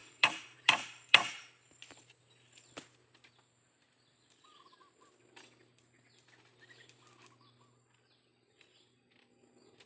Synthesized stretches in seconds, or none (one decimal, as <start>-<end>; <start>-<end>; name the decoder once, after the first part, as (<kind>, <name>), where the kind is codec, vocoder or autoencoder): 0.0-1.4 (vocoder, BigVGAN v2)